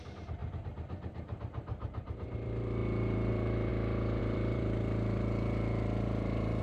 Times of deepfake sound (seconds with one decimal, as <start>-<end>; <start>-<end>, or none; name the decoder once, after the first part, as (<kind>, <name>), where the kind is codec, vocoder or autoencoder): 0.0-3.7 (vocoder, BigVGAN v2); 4.2-6.6